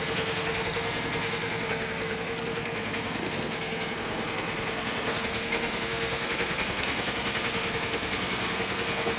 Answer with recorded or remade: remade